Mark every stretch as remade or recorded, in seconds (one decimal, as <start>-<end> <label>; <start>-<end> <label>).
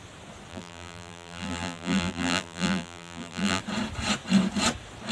0.0-0.5 recorded; 0.5-3.6 remade; 3.6-5.1 recorded